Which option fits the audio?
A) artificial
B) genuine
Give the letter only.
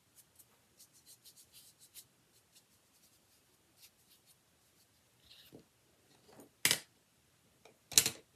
B